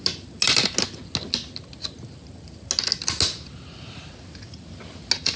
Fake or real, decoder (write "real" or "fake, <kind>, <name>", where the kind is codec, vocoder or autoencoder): real